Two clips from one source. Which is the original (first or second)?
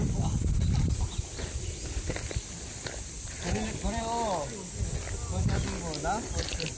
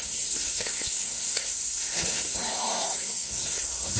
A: first